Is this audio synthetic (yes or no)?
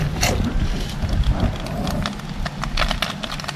no